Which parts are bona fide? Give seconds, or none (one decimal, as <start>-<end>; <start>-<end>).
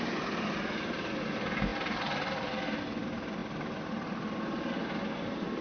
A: 0.0-5.6